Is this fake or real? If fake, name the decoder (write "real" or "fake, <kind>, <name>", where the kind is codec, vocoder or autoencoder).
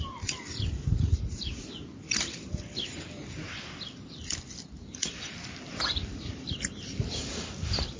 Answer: fake, vocoder, BigVGAN v2